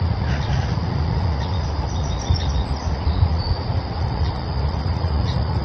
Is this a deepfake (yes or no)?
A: yes